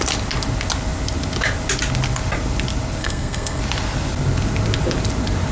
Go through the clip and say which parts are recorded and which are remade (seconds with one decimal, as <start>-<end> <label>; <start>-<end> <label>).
0.0-3.0 recorded; 3.0-3.6 remade; 3.6-5.5 recorded